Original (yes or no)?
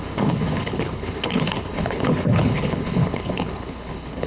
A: no